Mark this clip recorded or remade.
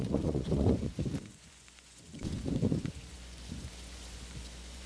remade